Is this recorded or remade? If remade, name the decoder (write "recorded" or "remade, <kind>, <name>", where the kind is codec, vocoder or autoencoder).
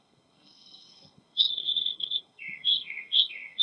remade, codec, SNAC